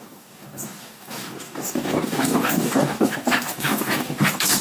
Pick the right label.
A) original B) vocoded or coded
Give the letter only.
B